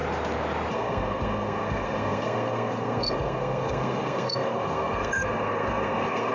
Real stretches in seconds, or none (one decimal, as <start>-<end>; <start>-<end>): 0.0-0.7